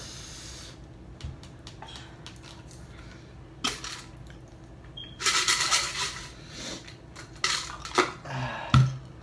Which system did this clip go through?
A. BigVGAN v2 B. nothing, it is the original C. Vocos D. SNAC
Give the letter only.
B